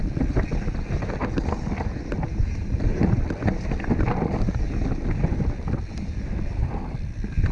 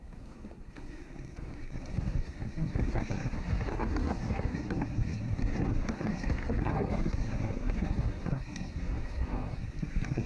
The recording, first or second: first